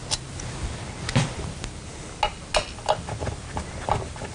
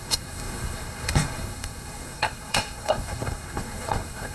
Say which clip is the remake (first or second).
second